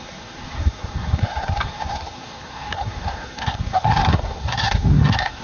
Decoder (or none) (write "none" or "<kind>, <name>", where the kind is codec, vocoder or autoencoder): codec, SNAC